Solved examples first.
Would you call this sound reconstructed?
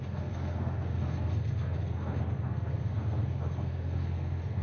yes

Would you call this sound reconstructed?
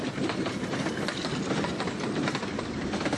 no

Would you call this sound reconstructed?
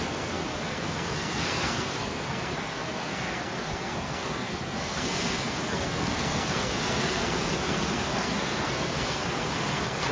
yes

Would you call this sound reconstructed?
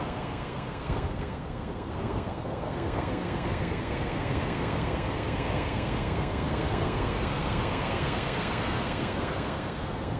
yes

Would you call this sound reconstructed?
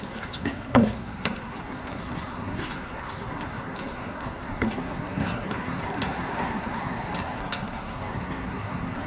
yes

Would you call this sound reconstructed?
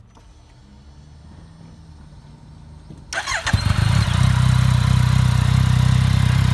no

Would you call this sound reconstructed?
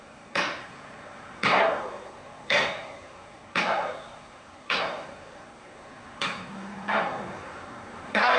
yes